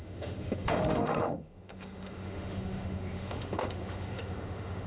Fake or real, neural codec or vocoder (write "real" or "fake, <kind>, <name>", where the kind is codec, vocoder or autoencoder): fake, autoencoder, DAC-VAE